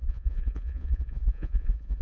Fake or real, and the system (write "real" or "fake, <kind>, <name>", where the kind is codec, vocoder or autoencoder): fake, vocoder, Vocos